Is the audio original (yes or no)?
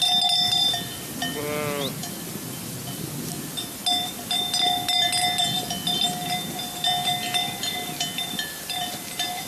yes